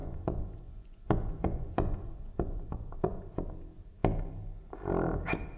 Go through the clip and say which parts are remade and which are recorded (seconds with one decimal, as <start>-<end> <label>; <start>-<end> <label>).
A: 0.0-3.2 remade; 3.2-5.6 recorded

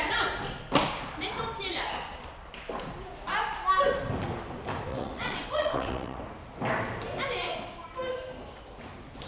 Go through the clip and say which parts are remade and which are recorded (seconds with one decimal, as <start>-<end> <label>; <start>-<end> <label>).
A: 0.0-4.9 recorded; 4.9-6.2 remade; 6.2-9.3 recorded

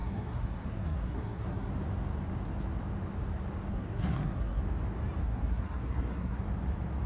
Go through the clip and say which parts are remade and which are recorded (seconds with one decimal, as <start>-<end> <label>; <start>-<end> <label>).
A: 0.0-1.7 remade; 1.7-3.7 recorded; 3.7-4.6 remade; 4.6-5.2 recorded; 5.2-6.4 remade; 6.4-7.1 recorded

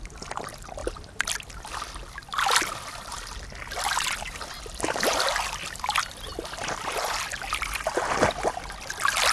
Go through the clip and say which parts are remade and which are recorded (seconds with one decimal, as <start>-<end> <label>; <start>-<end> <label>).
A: 0.0-9.3 recorded

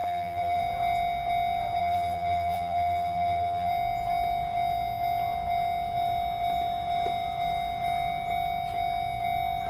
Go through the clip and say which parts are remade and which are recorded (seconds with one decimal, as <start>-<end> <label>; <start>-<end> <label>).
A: 0.0-0.6 remade; 0.6-1.8 recorded; 1.8-3.7 remade; 3.7-9.7 recorded

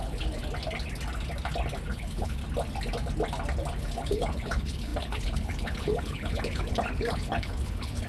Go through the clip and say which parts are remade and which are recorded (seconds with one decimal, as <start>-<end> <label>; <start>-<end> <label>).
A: 0.0-0.4 remade; 0.4-1.9 recorded; 1.9-2.4 remade; 2.4-3.8 recorded; 3.8-8.1 remade

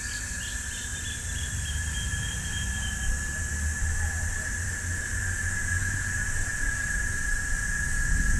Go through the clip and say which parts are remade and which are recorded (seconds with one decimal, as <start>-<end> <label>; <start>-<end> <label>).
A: 0.0-0.9 recorded; 0.9-5.5 remade; 5.5-6.5 recorded; 6.5-7.6 remade; 7.6-8.4 recorded

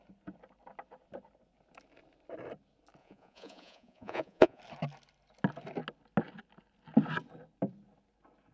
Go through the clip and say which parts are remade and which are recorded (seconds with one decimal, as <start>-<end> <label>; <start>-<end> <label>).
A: 0.0-3.0 recorded; 3.0-4.6 remade; 4.6-8.5 recorded